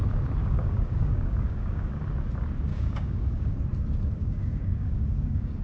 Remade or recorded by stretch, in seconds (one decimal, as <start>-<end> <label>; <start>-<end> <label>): 0.0-0.4 recorded; 0.4-1.9 remade; 1.9-2.7 recorded; 2.7-3.5 remade; 3.5-4.2 recorded; 4.2-5.6 remade